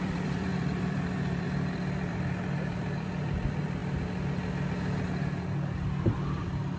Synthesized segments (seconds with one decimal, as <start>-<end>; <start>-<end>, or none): 0.0-3.8